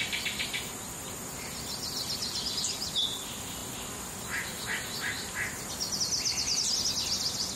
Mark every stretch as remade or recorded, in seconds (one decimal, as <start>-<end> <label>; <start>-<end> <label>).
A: 0.0-7.6 recorded